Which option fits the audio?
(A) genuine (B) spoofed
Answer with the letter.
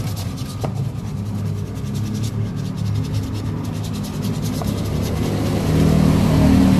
A